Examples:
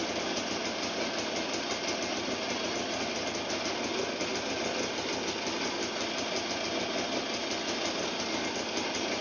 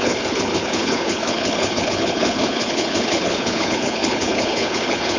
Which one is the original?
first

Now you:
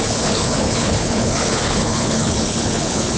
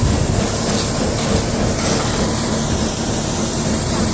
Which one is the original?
second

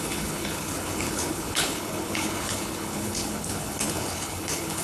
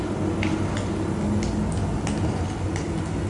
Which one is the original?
second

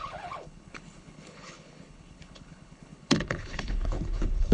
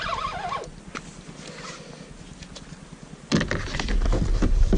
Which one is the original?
second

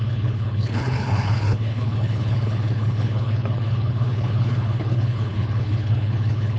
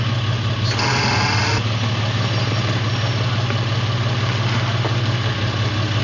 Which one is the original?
second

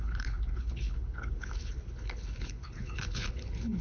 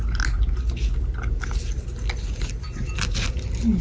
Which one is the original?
second